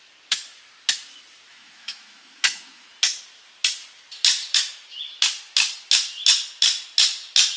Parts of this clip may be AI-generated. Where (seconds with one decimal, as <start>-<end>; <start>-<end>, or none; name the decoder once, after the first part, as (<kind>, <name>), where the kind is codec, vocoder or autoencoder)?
1.5-2.9 (autoencoder, DAC-VAE)